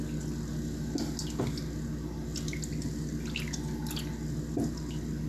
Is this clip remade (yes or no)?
no